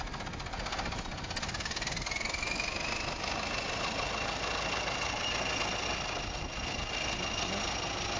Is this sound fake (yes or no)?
no